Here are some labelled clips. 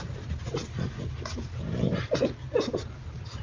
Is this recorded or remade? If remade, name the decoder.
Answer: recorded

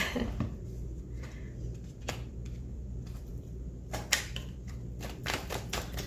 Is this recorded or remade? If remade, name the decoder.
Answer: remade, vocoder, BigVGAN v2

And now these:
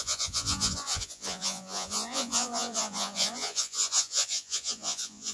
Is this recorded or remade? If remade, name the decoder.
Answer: remade, vocoder, Vocos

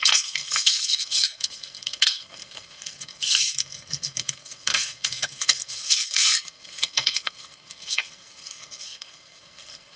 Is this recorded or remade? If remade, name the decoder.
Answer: remade, codec, SNAC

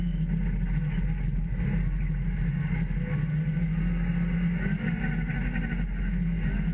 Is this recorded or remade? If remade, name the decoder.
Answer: recorded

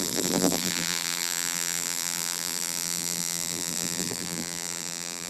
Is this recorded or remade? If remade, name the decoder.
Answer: remade, vocoder, BigVGAN v2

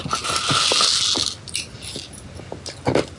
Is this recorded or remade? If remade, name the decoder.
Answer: recorded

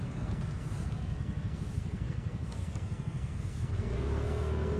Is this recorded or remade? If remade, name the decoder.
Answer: remade, codec, SNAC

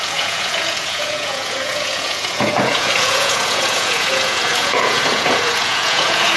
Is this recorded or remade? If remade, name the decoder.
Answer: remade, vocoder, Vocos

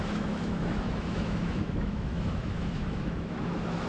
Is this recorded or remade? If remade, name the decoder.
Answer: remade, autoencoder, DAC-VAE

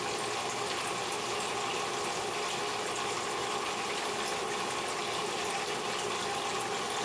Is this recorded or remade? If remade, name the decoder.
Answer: recorded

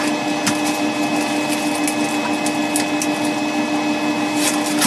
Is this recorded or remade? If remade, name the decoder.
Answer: recorded